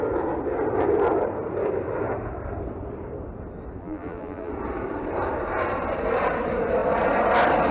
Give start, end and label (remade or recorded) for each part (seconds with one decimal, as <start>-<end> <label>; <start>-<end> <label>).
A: 0.0-3.8 recorded; 3.8-4.5 remade; 4.5-7.7 recorded